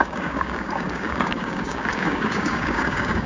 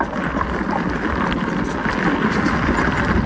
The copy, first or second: first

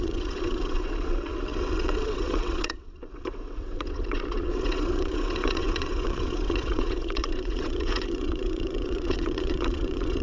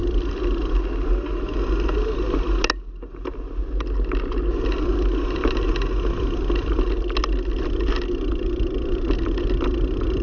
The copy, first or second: first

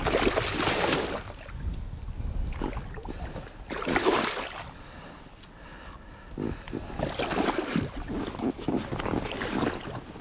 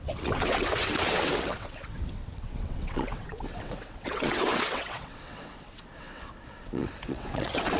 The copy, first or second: second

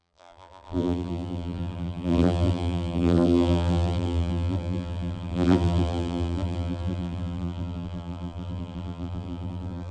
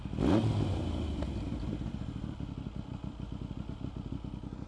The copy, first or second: first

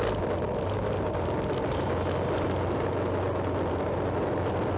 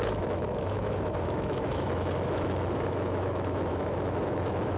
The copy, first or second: second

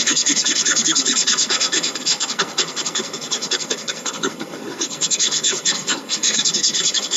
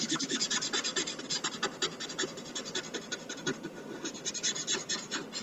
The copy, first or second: first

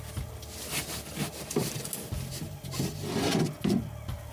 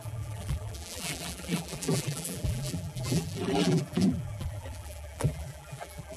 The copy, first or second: second